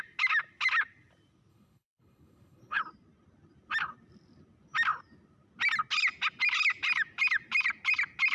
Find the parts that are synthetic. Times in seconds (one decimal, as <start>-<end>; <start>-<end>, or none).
1.5-2.8